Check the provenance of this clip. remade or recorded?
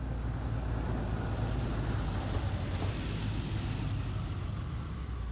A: recorded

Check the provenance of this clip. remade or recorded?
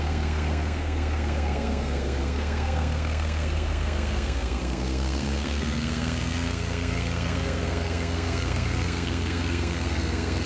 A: remade